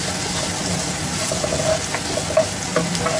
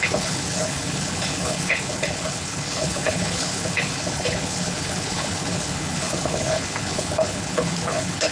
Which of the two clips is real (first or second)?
first